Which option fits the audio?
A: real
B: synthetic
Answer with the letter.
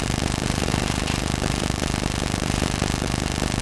B